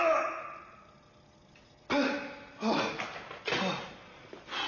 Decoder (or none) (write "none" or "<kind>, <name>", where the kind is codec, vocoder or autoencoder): none